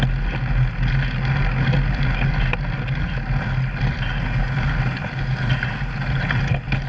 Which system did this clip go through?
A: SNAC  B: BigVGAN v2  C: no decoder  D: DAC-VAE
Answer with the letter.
C